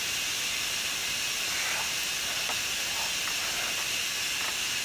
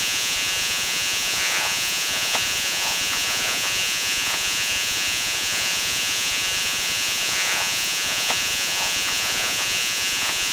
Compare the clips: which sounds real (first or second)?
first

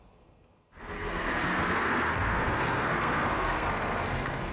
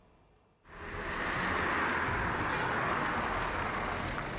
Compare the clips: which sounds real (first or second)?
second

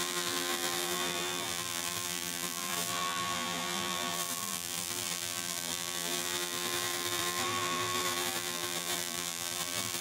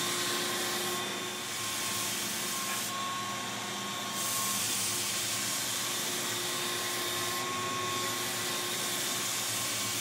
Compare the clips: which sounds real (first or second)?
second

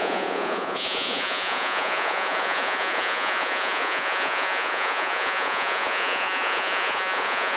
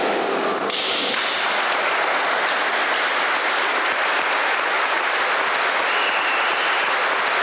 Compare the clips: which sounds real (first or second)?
second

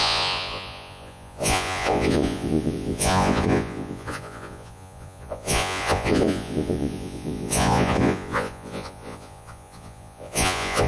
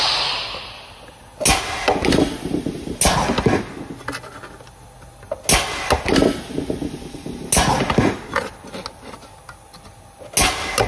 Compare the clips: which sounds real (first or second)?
second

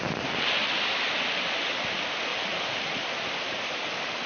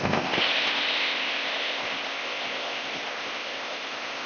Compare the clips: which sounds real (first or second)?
first